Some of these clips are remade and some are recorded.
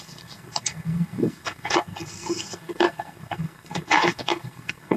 remade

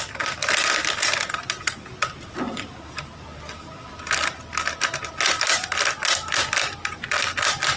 recorded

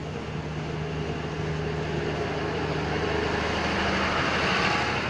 recorded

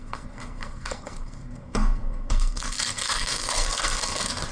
remade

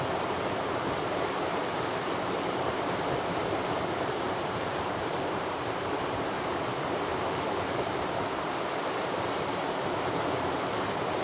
remade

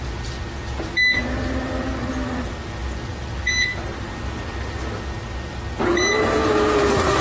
recorded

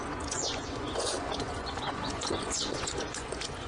remade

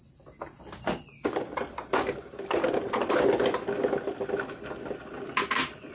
recorded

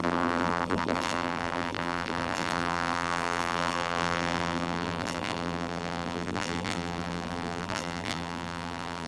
remade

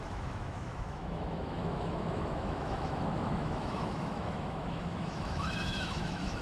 remade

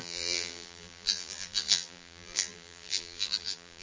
remade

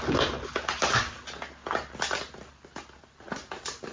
recorded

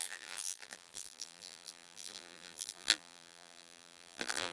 remade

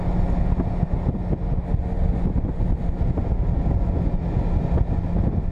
recorded